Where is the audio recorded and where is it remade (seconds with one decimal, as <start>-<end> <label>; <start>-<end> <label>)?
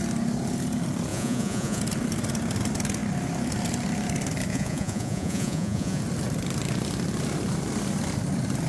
0.0-1.1 recorded; 1.1-1.8 remade; 1.8-4.5 recorded; 4.5-6.0 remade; 6.0-8.7 recorded